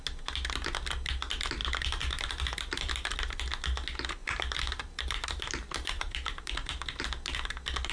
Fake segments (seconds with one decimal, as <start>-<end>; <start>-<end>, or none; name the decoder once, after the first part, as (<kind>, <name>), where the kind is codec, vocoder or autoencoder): 1.6-2.9 (vocoder, BigVGAN v2); 4.2-6.5